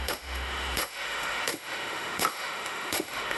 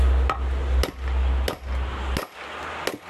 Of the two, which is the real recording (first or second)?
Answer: second